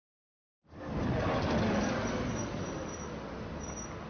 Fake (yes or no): yes